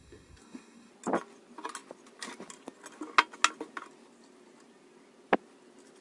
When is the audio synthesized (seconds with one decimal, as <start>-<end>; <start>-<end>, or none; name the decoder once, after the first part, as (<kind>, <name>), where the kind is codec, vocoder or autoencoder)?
0.0-0.9 (codec, SNAC)